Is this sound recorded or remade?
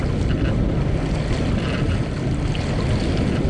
recorded